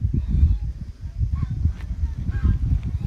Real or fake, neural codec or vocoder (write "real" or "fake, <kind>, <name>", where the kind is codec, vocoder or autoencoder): fake, vocoder, BigVGAN v2